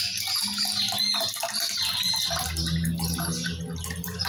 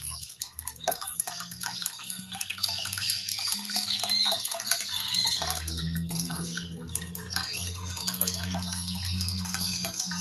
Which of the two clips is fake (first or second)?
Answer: second